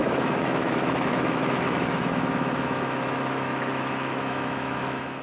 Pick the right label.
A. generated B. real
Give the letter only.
A